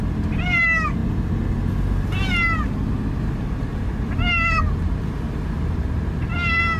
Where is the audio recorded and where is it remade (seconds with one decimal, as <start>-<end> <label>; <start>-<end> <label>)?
0.0-6.8 recorded